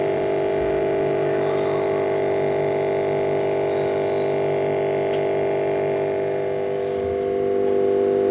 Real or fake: fake